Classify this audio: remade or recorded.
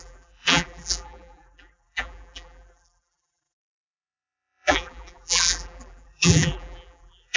remade